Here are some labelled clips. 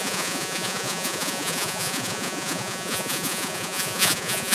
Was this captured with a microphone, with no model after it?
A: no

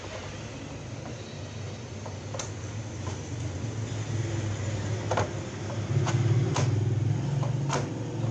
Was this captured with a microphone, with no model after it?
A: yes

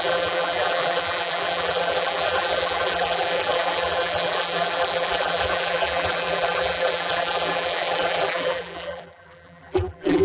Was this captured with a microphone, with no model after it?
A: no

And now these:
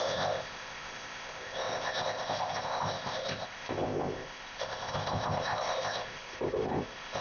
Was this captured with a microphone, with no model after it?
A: no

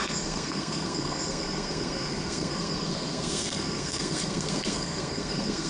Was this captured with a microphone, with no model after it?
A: no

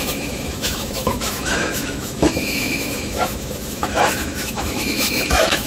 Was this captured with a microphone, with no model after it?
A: no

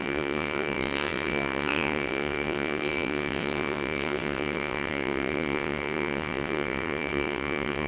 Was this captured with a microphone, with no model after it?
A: no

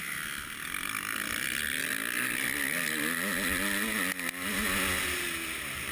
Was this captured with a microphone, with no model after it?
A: yes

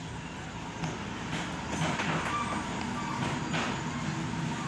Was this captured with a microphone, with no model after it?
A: yes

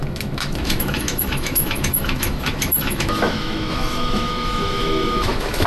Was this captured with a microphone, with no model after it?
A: no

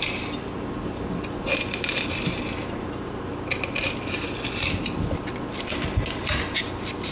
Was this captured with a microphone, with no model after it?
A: yes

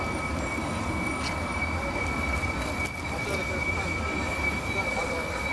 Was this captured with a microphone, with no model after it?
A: yes